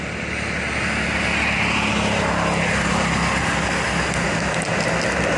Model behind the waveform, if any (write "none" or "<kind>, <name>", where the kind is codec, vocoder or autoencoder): none